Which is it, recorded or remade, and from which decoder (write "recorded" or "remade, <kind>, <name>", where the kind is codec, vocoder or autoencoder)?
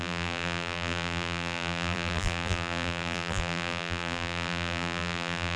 remade, vocoder, BigVGAN v2